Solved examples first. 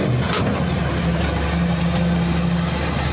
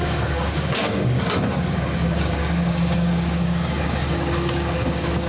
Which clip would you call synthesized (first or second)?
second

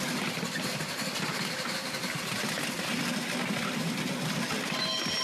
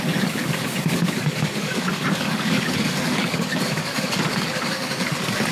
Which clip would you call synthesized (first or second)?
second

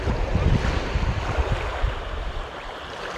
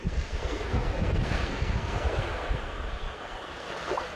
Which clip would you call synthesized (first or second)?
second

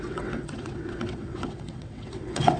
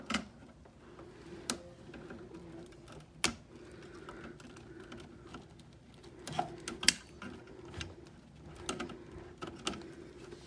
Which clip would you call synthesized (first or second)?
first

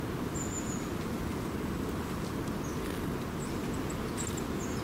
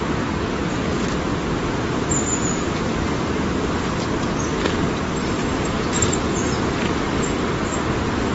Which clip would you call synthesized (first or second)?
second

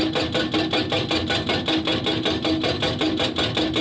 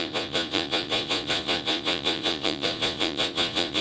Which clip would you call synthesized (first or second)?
second